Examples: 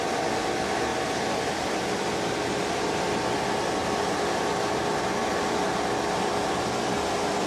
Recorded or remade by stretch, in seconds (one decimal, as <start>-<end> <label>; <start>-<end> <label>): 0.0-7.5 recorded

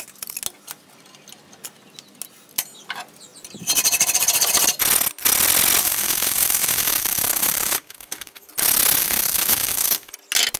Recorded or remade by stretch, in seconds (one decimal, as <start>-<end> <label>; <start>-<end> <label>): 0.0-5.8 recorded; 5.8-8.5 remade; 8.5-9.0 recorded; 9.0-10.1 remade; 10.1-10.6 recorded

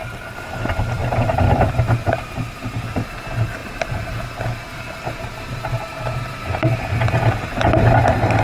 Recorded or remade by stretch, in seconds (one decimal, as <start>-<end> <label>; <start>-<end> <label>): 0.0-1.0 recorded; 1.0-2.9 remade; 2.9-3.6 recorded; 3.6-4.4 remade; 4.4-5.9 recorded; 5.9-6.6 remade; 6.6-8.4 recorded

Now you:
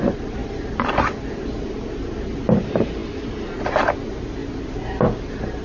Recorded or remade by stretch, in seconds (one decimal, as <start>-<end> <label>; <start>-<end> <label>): 0.0-5.6 recorded